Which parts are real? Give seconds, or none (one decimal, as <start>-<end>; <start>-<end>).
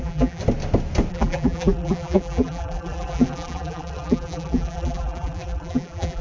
0.4-1.1